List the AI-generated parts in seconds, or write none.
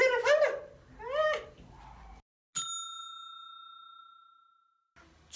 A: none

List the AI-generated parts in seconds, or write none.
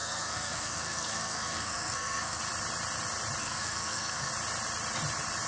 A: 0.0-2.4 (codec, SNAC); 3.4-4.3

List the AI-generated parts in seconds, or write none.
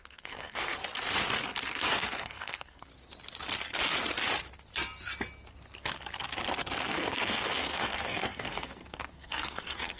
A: 0.0-0.8 (codec, SNAC); 1.9-2.9; 6.8-10.0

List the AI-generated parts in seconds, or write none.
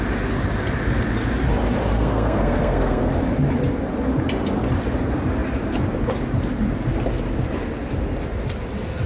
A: 1.9-3.1 (codec, SNAC)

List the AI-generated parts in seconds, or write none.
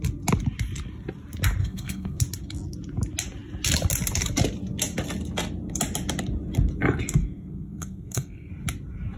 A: 1.6-2.2 (codec, SNAC); 7.2-8.5